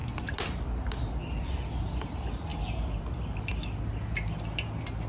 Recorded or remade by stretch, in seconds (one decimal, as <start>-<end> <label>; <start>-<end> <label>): 0.0-5.1 recorded